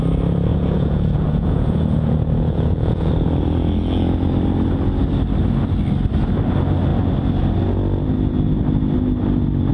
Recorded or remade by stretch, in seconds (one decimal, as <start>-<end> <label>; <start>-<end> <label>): 0.0-0.5 recorded; 0.5-3.1 remade; 3.1-9.7 recorded

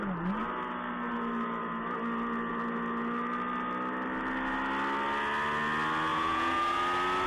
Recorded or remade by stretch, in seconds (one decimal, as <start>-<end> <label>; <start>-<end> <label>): 0.0-6.1 recorded; 6.1-6.8 remade; 6.8-7.3 recorded

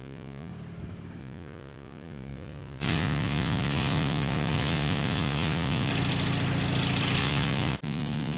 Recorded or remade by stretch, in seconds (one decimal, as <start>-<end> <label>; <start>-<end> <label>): 0.0-0.5 remade; 0.5-1.2 recorded; 1.2-5.9 remade; 5.9-7.2 recorded; 7.2-8.4 remade

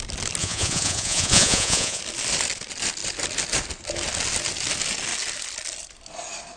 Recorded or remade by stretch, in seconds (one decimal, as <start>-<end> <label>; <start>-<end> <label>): 0.0-0.4 recorded; 0.4-2.0 remade; 2.0-6.6 recorded

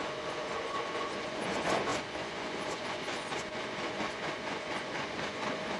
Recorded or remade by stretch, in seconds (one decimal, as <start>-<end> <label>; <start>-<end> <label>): 0.0-5.8 remade

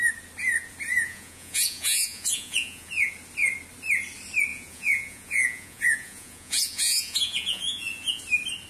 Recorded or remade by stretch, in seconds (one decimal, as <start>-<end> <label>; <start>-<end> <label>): 0.0-0.9 recorded; 0.9-3.1 remade; 3.1-4.5 recorded; 4.5-8.2 remade; 8.2-8.7 recorded

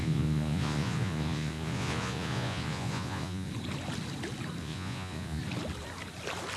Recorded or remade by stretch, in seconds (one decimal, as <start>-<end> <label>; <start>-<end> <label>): 0.0-3.5 remade; 3.5-4.6 recorded; 4.6-5.4 remade; 5.4-6.6 recorded